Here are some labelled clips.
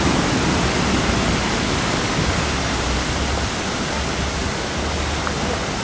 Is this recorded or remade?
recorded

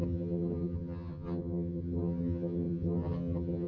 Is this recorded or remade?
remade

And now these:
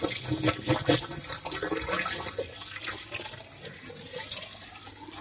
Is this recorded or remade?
recorded